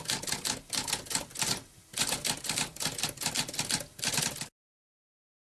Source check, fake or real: real